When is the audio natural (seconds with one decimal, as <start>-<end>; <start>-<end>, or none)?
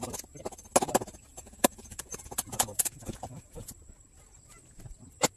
0.0-1.3; 3.7-5.4